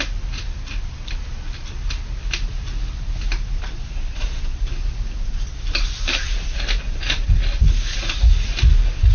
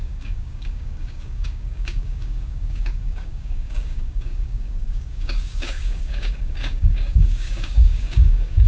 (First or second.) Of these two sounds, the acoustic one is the first